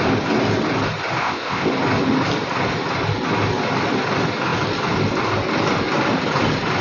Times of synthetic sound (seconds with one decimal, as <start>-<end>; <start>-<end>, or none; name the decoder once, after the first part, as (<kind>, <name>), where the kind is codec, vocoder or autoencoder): 1.2-1.7 (codec, ZipCodec)